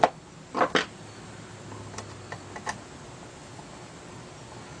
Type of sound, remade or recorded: recorded